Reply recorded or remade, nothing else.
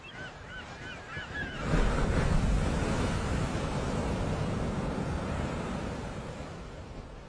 recorded